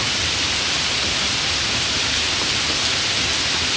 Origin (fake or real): real